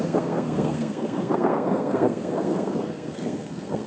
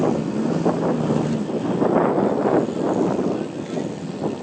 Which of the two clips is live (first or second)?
second